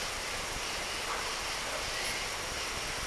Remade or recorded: recorded